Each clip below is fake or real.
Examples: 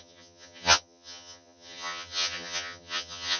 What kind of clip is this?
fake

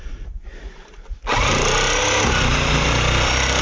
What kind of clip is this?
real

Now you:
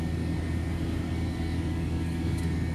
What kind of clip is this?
fake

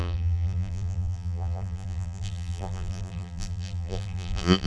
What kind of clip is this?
fake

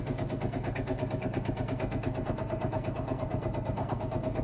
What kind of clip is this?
fake